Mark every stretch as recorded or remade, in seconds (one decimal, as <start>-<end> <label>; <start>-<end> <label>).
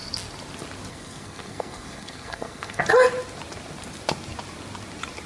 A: 0.0-0.9 recorded; 0.9-2.8 remade; 2.8-5.3 recorded